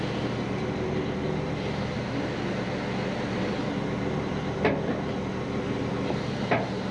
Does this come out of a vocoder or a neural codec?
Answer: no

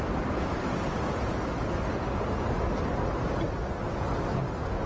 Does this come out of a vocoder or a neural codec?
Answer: no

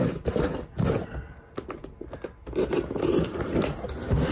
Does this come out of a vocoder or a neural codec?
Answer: no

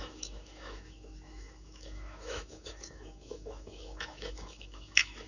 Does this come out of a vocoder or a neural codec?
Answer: yes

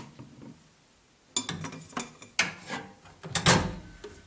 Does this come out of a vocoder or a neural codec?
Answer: no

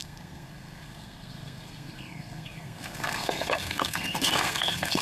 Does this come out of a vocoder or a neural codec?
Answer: yes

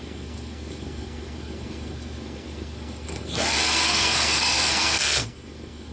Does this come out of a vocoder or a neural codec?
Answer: yes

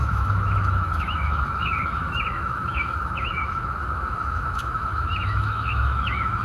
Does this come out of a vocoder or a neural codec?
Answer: yes